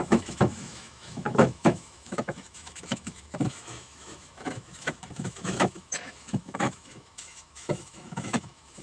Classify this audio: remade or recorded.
remade